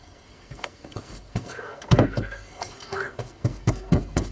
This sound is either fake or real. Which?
fake